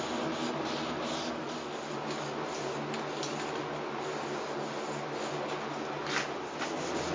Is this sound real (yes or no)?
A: yes